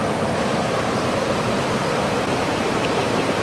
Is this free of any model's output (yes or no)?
no